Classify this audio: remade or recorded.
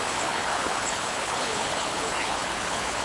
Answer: remade